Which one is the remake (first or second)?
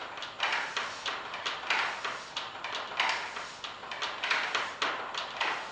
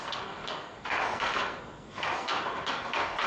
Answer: second